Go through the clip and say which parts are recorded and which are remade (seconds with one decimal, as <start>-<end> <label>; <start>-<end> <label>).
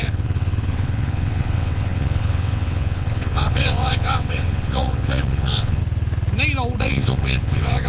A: 0.0-5.8 remade; 5.8-6.8 recorded; 6.8-7.9 remade